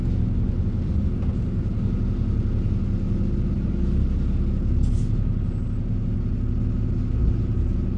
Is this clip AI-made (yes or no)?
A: no